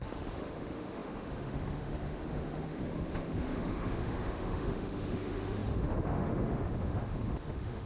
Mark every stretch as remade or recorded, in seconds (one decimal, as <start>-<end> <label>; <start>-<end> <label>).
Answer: 0.0-7.9 remade